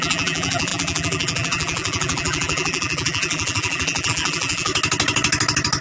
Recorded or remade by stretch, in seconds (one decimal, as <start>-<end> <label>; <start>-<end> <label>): 0.0-4.7 remade; 4.7-5.8 recorded